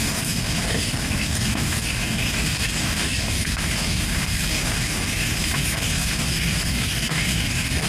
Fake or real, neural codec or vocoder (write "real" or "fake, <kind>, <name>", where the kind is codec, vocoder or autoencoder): fake, codec, DAC